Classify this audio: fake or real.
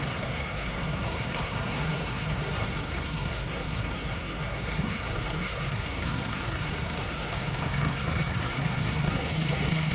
fake